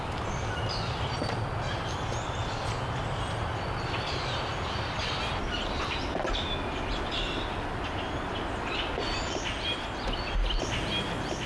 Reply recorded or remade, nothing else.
recorded